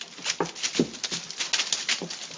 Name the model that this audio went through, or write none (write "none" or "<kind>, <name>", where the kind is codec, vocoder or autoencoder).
none